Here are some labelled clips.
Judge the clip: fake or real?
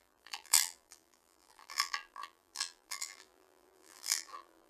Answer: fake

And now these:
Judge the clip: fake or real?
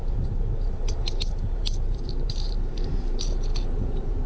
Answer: fake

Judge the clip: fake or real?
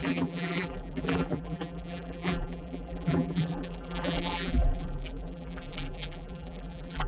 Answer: fake